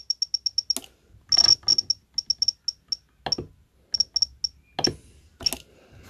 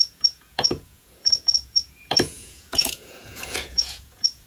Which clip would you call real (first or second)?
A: first